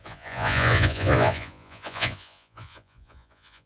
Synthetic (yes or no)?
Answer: yes